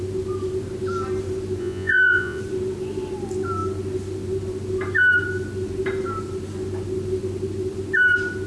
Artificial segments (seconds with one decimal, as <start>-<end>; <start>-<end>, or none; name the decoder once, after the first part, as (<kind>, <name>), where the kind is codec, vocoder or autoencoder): 1.6-2.4 (vocoder, Vocos)